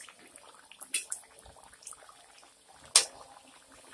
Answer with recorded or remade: recorded